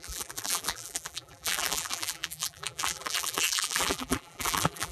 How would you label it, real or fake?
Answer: fake